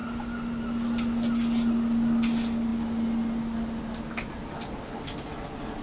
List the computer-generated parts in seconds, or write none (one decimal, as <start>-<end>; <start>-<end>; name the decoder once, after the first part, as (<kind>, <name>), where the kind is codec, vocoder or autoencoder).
none